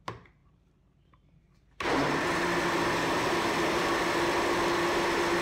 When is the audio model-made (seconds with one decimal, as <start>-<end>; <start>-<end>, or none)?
0.4-2.4